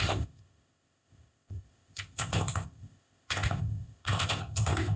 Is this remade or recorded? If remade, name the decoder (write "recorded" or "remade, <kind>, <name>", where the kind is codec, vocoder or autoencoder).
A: remade, codec, ZipCodec